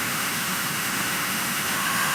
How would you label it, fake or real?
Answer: fake